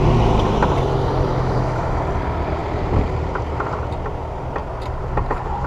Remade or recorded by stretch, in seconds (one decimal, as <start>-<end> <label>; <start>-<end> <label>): 0.0-1.3 recorded; 1.3-1.9 remade; 1.9-5.7 recorded